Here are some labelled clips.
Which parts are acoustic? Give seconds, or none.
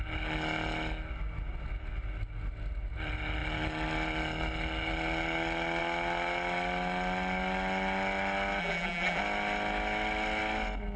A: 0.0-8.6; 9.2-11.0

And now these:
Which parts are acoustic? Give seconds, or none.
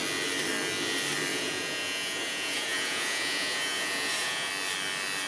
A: 0.0-1.3; 4.5-5.3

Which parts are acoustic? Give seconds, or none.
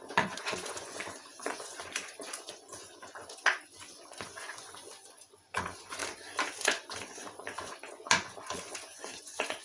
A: 6.0-6.6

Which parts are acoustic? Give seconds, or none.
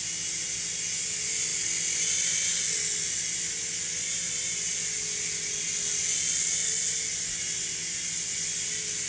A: 0.0-9.1